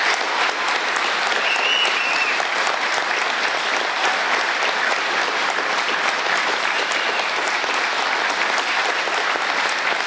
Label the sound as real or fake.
real